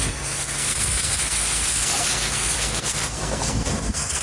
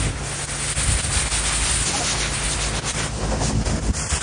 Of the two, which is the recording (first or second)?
second